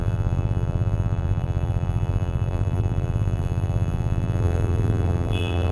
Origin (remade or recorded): remade